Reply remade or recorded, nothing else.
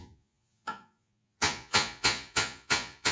remade